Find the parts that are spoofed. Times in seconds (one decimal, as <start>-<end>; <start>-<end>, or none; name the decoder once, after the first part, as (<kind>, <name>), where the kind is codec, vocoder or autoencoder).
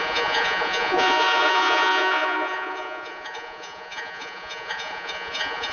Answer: 0.0-5.7 (vocoder, Vocos)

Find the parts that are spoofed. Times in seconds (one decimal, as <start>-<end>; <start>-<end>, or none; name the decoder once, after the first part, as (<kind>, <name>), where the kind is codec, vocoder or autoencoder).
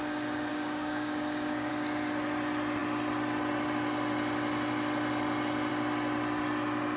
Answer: 0.5-1.7 (codec, DAC)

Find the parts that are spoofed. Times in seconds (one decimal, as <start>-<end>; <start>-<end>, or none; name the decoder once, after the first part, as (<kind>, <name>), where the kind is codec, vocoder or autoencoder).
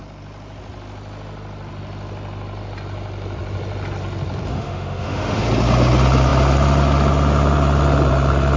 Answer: 4.5-5.4 (autoencoder, DAC-VAE)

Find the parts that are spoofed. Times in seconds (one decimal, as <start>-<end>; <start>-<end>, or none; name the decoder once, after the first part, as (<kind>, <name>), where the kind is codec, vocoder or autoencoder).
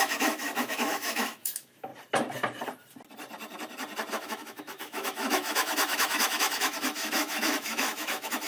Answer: 0.0-1.9 (autoencoder, DAC-VAE); 4.1-8.5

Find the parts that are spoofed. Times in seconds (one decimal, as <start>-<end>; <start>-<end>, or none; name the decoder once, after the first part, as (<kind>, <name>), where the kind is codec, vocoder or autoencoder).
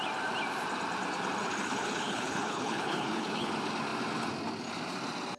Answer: 1.4-3.5 (codec, HILCodec)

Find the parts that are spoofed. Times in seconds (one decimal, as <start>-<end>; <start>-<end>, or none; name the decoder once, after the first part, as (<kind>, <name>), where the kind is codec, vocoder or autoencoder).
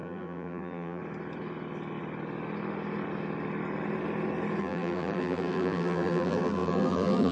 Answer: 0.0-1.0 (vocoder, BigVGAN v2); 4.6-7.3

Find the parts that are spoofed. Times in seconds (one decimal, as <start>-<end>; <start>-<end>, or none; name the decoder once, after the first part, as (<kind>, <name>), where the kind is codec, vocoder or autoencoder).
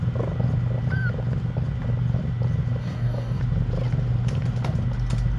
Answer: 2.8-3.4 (codec, DAC)